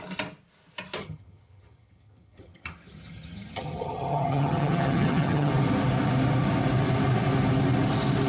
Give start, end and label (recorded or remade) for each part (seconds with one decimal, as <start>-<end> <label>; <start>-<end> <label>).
0.0-1.0 recorded; 1.0-5.5 remade; 5.5-8.3 recorded